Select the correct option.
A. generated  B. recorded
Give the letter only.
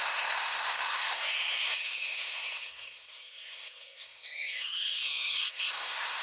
A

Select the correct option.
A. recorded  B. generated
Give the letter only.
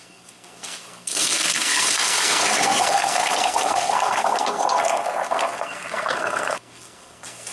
B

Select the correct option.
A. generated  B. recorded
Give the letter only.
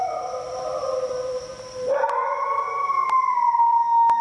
B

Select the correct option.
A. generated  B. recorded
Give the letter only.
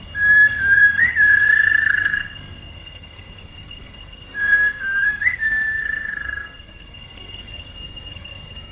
A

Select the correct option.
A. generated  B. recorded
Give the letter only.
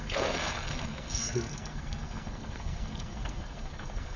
A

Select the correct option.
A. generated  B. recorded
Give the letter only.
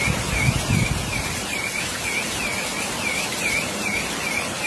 B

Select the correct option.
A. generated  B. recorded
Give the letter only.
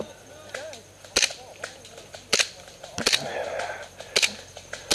B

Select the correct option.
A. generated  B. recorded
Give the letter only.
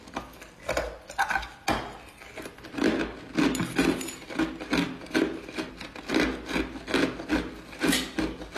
B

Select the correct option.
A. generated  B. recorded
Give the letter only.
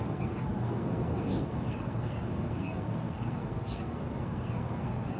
A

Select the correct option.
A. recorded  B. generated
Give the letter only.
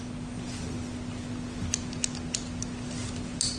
A